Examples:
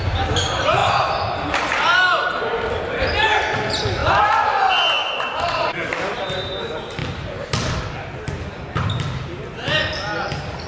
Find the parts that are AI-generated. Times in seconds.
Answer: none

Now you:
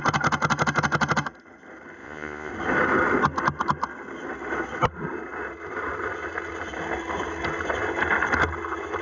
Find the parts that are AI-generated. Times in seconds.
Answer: 2.0-2.5 (vocoder, Vocos)

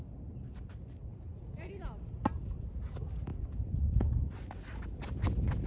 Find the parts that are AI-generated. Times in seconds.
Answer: 1.1-1.8 (vocoder, Vocos)

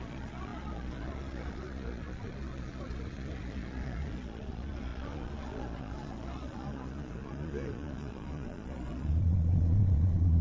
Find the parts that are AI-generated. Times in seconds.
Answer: 0.0-10.4 (vocoder, Vocos)

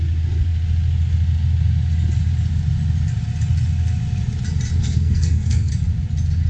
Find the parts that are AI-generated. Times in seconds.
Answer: 4.8-5.7 (codec, SNAC)

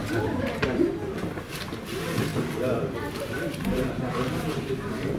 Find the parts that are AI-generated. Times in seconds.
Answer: 0.0-0.6 (vocoder, BigVGAN v2)

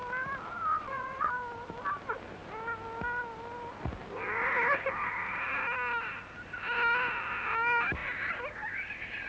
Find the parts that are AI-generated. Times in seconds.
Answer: 0.7-1.3 (vocoder, WaveNeXt)